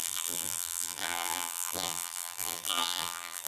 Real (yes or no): no